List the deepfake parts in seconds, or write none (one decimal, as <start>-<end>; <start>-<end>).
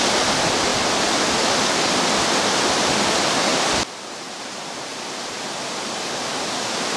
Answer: none